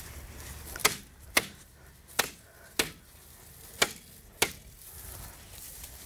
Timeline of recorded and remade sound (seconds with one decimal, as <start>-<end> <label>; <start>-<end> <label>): 0.0-6.1 recorded